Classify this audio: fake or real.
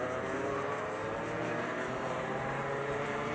fake